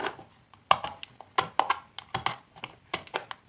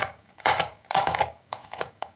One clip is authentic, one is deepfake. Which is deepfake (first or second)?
second